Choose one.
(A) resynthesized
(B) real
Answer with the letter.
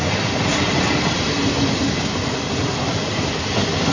B